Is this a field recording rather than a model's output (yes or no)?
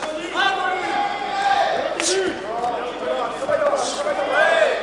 no